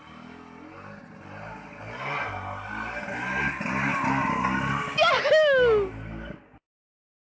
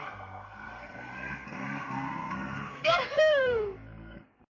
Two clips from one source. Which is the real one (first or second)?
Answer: first